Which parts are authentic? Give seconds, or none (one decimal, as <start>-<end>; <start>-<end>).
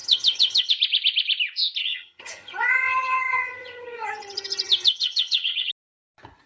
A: 0.7-1.8; 5.7-6.5